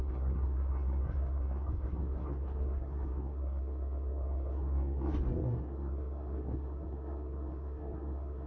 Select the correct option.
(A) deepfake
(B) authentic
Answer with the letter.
A